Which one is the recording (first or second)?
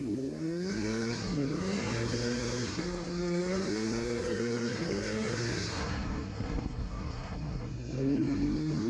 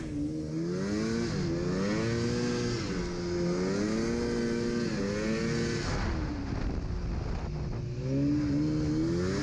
second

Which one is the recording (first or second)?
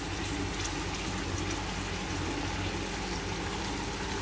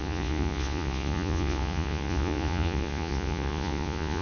first